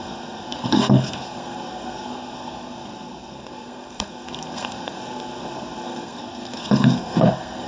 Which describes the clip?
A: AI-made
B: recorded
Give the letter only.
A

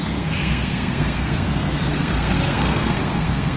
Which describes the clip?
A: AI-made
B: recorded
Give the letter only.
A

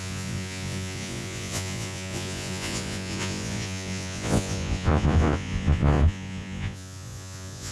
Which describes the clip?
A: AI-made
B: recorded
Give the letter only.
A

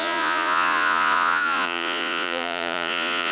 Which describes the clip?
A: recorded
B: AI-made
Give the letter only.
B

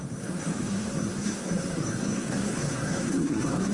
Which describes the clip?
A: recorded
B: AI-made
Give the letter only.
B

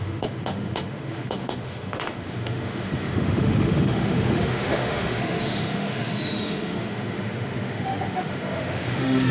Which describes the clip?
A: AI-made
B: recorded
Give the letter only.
A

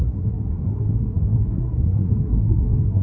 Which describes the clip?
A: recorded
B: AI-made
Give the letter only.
B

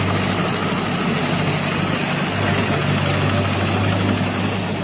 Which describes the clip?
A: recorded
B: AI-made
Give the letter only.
A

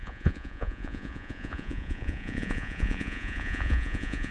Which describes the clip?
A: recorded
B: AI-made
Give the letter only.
B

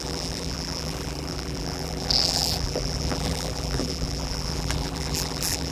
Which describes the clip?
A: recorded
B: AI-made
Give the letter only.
B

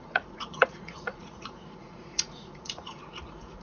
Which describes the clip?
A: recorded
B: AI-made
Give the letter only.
B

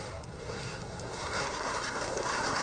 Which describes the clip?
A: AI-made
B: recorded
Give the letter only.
A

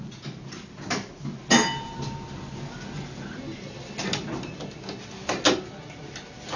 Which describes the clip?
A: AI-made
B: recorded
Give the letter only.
B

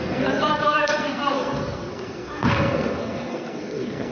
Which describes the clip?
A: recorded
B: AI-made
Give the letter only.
B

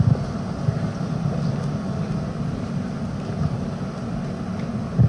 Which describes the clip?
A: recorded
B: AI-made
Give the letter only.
A